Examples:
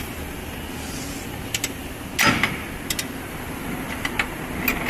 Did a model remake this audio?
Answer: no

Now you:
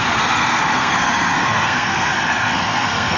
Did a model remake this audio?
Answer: yes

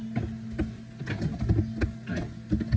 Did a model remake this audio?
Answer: no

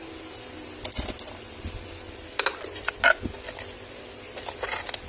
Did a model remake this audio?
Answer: no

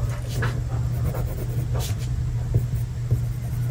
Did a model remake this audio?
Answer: no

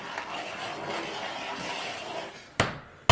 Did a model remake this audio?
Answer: no